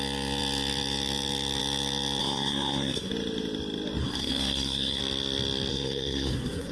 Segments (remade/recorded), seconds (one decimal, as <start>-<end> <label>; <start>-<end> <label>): 0.0-2.2 recorded; 2.2-3.1 remade; 3.1-4.0 recorded; 4.0-5.0 remade; 5.0-5.7 recorded; 5.7-6.7 remade